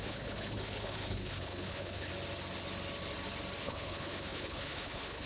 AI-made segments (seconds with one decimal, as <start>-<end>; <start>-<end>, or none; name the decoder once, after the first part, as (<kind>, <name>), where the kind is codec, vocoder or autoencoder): 0.0-2.1 (codec, HILCodec); 3.6-5.3

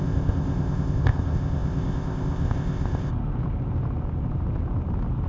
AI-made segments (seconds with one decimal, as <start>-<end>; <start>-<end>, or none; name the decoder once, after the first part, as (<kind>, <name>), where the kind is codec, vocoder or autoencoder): 0.0-3.1 (codec, ZipCodec)

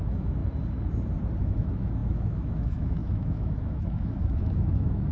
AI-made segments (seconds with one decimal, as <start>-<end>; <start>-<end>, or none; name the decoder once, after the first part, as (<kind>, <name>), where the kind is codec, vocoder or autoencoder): 0.0-0.4 (autoencoder, DAC-VAE); 1.4-5.1

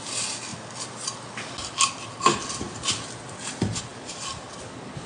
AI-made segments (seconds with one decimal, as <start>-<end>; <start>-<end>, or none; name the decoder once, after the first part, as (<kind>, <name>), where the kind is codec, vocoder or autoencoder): none

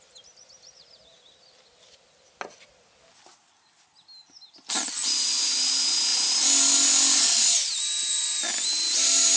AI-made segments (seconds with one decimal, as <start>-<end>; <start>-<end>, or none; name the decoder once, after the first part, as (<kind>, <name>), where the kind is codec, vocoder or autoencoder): none

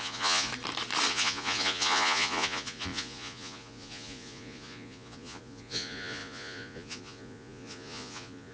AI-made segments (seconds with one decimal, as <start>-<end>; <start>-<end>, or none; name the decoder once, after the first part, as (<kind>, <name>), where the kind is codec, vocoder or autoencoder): 0.0-0.5 (vocoder, Vocos); 1.1-8.5